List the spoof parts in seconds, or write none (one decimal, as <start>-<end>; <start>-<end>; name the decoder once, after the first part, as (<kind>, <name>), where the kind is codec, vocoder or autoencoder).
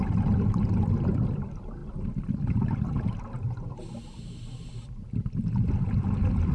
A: none